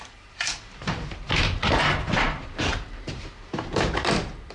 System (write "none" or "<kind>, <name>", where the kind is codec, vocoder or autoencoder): vocoder, BigVGAN v2